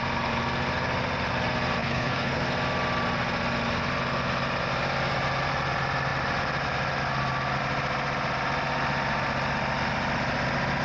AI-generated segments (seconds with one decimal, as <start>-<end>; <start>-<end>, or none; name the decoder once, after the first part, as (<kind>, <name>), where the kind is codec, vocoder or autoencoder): 1.8-2.4 (codec, HILCodec)